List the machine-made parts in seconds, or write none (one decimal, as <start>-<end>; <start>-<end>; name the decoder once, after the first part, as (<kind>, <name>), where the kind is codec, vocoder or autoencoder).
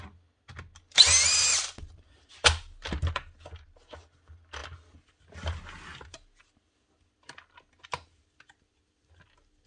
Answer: none